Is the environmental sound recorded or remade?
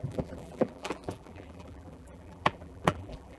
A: remade